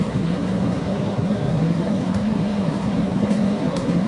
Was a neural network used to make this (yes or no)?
yes